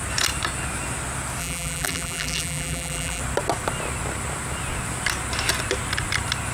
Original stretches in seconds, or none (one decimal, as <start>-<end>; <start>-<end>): 0.0-1.4; 3.2-6.5